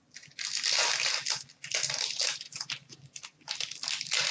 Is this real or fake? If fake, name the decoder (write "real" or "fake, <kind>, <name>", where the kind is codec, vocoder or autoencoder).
real